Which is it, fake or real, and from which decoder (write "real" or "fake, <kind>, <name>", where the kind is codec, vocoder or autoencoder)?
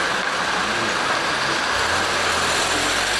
real